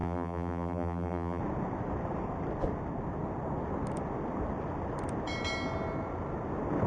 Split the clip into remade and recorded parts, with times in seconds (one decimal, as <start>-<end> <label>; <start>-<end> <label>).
0.0-1.4 remade; 1.4-6.9 recorded